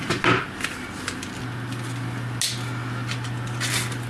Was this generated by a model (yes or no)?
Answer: no